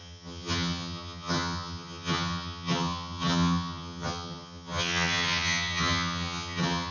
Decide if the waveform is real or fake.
fake